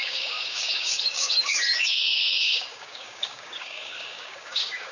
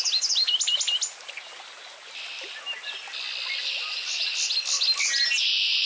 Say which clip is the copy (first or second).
first